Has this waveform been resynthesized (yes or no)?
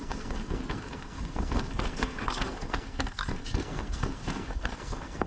yes